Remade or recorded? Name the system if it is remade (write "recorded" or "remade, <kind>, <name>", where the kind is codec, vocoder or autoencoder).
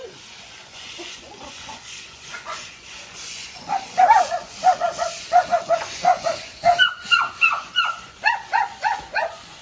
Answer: remade, vocoder, Vocos